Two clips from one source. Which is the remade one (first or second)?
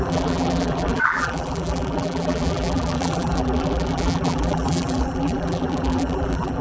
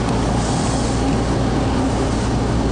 first